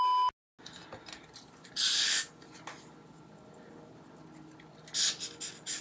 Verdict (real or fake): real